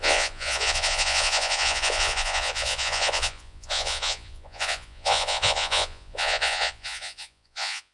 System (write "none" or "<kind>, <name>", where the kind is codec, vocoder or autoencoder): vocoder, Vocos